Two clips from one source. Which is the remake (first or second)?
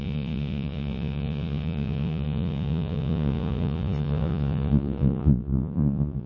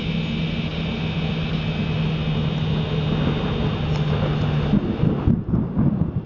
first